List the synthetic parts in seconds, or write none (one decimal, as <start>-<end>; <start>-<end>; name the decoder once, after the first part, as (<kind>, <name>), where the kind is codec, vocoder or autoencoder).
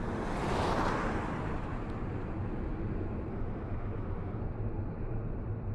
3.3-4.4 (autoencoder, DAC-VAE)